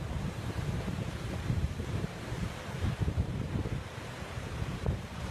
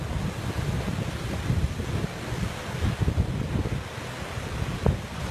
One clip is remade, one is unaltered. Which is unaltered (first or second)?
second